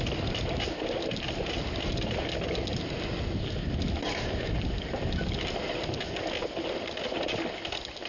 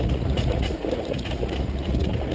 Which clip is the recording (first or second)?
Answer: first